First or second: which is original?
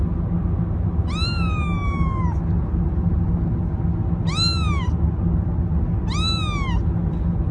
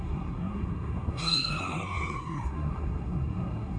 first